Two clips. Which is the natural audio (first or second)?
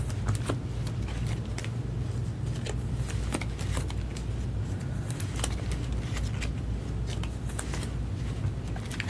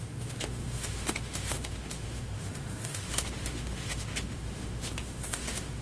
first